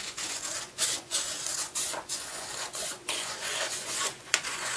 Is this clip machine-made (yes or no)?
yes